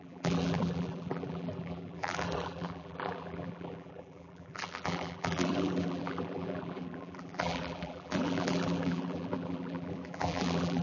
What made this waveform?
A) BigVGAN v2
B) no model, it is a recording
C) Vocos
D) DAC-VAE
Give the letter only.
A